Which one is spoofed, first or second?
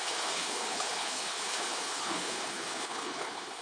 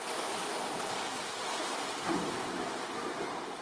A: first